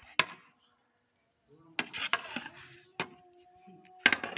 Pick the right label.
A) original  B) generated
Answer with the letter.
A